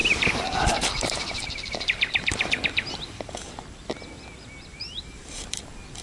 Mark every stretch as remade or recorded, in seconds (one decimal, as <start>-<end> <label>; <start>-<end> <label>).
0.0-3.6 remade; 3.6-4.7 recorded; 4.7-6.0 remade